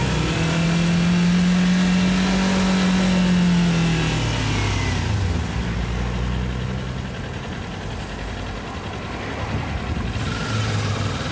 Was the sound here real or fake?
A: real